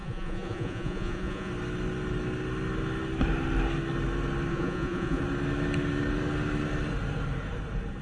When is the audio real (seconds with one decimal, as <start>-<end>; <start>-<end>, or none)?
1.5-4.5; 5.2-8.0